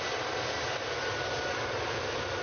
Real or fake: real